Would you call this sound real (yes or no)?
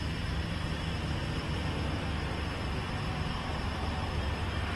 no